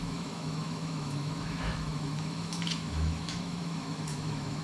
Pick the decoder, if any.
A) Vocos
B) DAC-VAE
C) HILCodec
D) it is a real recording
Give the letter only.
B